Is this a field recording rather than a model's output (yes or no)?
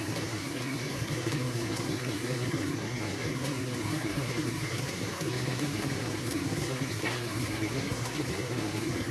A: no